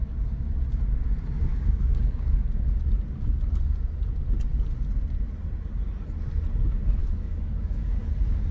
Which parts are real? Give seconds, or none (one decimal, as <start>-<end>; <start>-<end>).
0.0-1.5; 2.4-7.0; 8.1-8.5